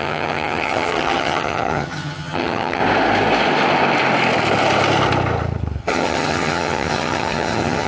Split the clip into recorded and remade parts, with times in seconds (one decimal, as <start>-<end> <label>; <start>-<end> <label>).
0.0-2.8 remade; 2.8-5.8 recorded; 5.8-7.9 remade